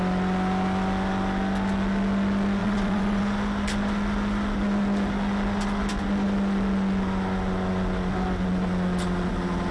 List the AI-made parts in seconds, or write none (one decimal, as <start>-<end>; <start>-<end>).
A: 2.6-3.2